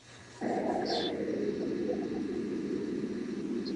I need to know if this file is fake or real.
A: real